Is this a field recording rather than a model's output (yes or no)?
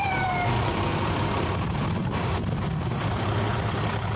no